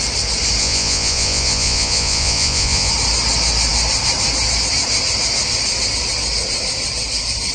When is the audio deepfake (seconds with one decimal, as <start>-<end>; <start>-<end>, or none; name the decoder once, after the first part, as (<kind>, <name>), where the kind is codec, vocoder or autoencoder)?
0.6-2.9 (vocoder, Vocos)